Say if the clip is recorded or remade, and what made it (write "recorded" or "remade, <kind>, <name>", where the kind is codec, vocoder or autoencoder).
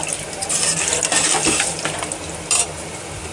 remade, vocoder, BigVGAN v2